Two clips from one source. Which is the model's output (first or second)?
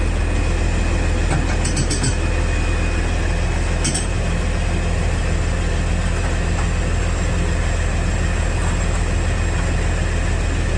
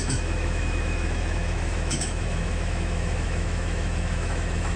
second